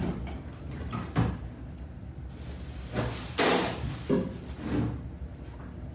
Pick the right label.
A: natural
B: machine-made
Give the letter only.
A